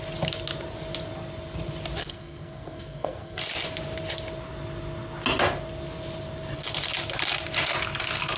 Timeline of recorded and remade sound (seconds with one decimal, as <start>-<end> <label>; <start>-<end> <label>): 0.0-2.0 recorded; 2.0-3.4 remade; 3.4-8.4 recorded